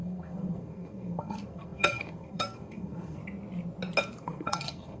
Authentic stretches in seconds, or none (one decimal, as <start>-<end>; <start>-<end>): 3.2-4.2